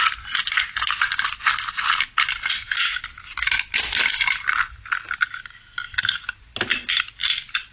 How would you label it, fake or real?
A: real